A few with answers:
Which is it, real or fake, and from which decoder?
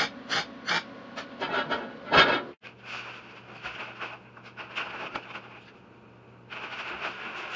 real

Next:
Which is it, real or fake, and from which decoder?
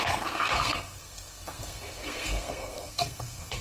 fake, codec, SNAC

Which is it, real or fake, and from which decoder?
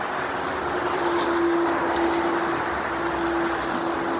real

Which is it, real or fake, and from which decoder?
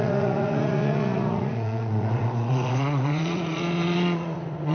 fake, vocoder, Vocos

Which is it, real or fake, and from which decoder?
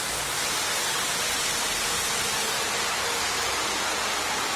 real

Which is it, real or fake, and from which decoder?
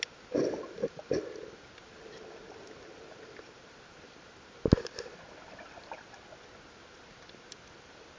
real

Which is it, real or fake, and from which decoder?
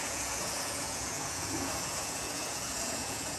fake, vocoder, Vocos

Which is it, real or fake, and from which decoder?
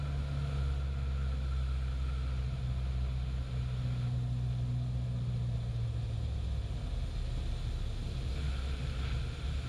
real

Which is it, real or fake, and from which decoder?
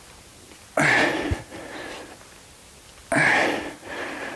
real